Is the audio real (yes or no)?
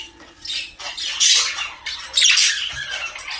yes